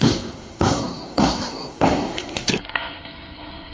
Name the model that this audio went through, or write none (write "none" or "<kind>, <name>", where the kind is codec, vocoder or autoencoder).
codec, SNAC